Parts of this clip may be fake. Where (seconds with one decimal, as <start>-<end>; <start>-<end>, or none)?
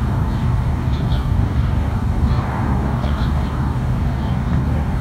0.0-5.0